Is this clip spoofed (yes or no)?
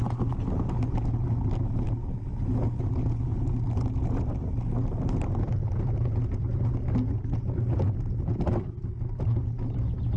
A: no